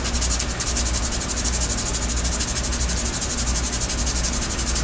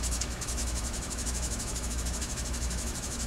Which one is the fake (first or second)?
second